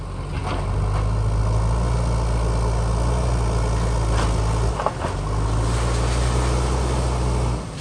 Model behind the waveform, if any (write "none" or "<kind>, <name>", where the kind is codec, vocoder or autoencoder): none